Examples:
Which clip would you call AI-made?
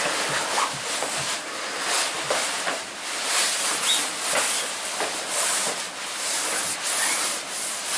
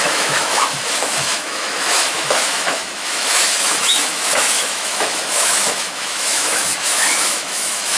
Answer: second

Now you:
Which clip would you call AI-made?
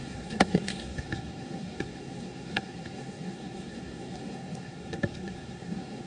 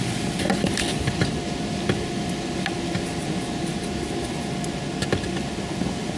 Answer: first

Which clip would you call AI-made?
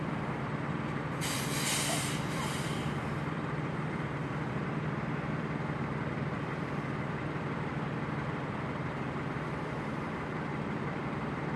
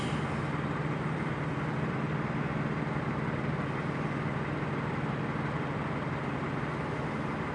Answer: first